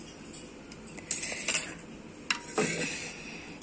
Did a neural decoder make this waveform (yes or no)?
no